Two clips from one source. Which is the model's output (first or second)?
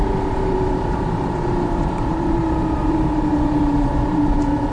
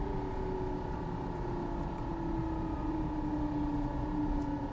first